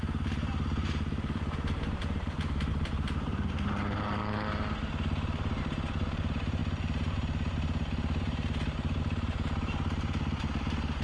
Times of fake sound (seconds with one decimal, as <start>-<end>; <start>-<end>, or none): 0.0-4.2; 5.6-11.0